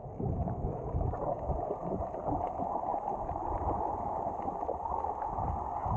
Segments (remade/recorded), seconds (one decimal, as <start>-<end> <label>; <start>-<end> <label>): 0.0-2.4 remade; 2.4-2.9 recorded; 2.9-4.9 remade; 4.9-6.0 recorded